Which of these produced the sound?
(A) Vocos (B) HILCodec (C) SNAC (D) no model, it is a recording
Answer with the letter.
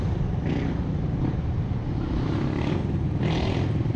D